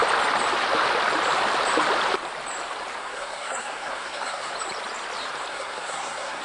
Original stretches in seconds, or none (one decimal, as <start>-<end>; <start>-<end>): 0.0-3.0; 4.5-5.5